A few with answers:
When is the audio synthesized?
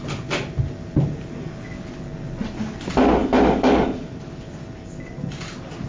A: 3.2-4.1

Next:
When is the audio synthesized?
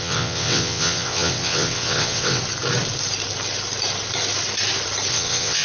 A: 0.0-2.4; 5.1-5.6